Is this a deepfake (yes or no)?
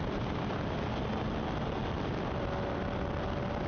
no